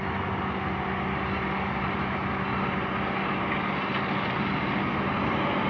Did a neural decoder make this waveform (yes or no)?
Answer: no